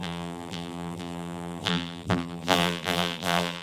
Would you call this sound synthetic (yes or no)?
yes